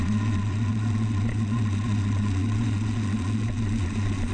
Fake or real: fake